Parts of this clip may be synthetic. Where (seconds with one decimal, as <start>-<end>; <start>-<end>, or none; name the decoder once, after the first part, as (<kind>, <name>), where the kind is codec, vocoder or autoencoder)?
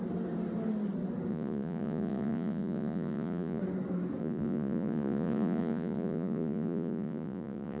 1.3-3.6 (vocoder, Vocos); 4.2-7.8